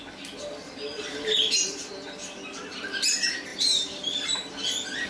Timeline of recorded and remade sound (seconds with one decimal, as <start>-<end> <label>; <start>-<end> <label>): 0.0-0.9 recorded; 0.9-1.9 remade; 1.9-3.5 recorded; 3.5-4.5 remade; 4.5-5.1 recorded